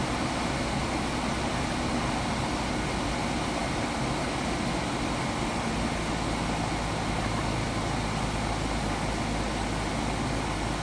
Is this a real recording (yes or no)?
yes